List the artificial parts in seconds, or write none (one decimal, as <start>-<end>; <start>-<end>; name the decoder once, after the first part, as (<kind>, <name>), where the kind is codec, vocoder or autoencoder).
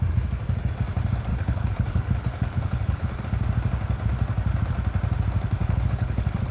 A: 1.3-3.2 (codec, HILCodec); 5.6-6.5